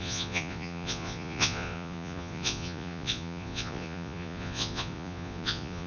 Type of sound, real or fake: fake